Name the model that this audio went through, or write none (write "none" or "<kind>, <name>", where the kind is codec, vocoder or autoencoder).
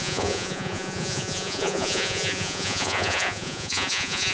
vocoder, Vocos